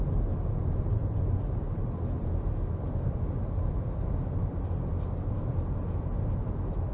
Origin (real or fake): real